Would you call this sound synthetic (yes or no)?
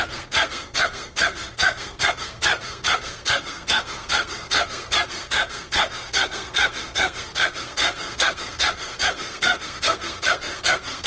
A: yes